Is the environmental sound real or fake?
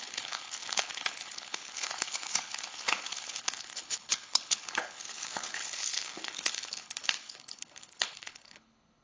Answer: fake